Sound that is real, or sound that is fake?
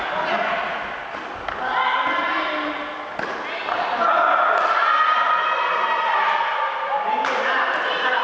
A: real